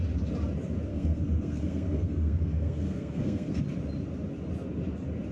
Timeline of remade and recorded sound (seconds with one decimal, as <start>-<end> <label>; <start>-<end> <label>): 0.0-0.9 recorded; 0.9-3.6 remade; 3.6-5.3 recorded